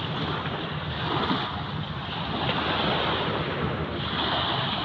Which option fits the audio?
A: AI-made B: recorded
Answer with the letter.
B